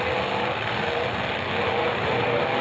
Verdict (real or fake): real